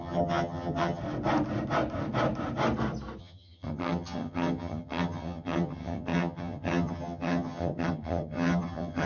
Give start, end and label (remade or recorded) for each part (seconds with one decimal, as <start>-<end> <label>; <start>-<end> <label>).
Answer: 0.0-1.0 remade; 1.0-3.2 recorded; 3.2-9.1 remade